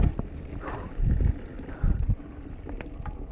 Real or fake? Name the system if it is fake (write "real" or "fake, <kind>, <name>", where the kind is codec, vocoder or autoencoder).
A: real